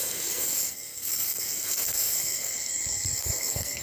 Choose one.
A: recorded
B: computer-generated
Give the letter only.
B